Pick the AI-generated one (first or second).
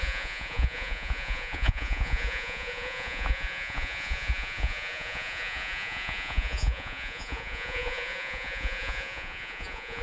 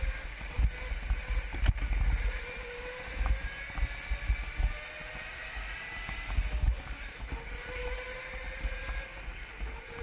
first